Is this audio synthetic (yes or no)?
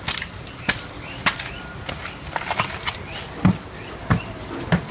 no